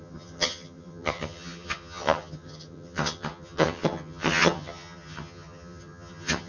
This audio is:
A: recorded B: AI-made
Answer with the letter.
B